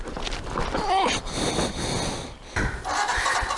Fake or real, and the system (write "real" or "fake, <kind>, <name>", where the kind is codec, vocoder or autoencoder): real